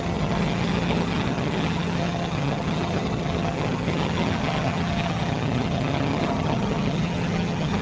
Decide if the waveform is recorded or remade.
remade